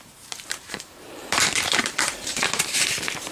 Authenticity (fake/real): fake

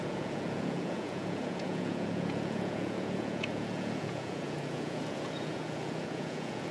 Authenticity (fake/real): fake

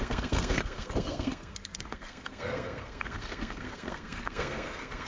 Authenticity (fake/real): fake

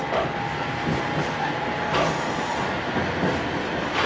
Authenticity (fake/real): real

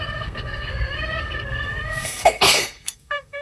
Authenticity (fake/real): fake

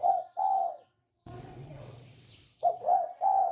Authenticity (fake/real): fake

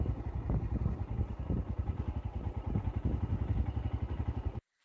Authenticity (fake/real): real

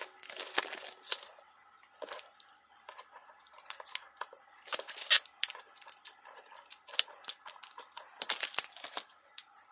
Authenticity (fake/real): real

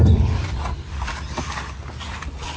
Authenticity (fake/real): real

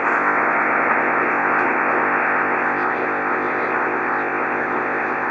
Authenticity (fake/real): fake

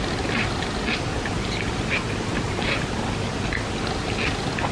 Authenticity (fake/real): real